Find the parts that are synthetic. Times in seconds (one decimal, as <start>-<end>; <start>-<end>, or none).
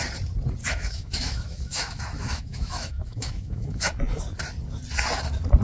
0.6-4.0